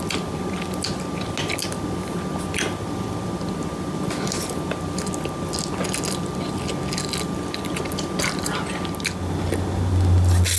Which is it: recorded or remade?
recorded